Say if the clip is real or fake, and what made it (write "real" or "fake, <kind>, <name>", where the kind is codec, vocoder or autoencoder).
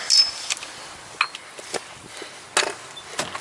real